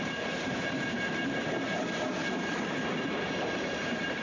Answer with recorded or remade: remade